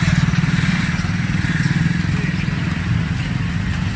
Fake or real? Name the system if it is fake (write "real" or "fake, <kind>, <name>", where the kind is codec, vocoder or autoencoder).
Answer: real